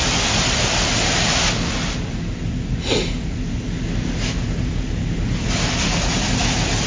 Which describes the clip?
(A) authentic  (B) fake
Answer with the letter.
A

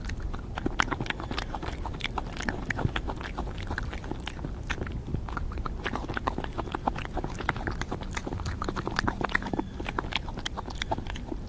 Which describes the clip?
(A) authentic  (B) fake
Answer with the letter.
A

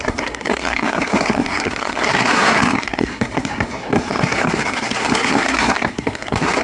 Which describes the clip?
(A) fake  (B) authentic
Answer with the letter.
A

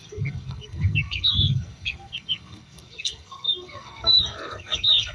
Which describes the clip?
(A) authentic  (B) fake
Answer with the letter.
B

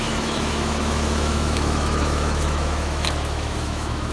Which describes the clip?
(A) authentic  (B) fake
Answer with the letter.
B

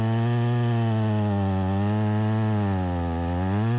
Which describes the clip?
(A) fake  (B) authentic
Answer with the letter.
B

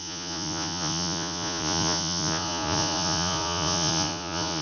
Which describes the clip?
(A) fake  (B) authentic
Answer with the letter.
A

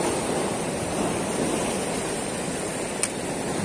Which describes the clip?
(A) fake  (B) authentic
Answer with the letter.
B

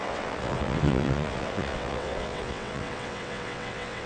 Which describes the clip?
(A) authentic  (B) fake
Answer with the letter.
B